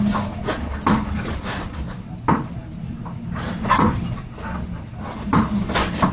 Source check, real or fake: real